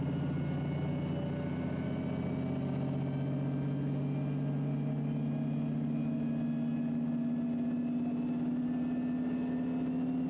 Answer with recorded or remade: recorded